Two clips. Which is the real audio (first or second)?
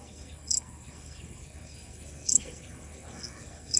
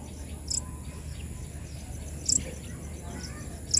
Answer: second